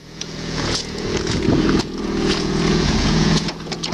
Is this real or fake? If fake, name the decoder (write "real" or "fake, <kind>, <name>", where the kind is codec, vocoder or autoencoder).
fake, vocoder, Vocos